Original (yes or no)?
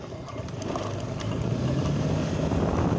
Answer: yes